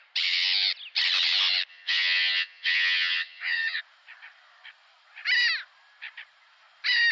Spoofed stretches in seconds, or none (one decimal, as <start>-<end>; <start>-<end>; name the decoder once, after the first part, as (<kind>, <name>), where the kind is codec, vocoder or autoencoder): 1.7-3.8 (vocoder, HiFi-GAN)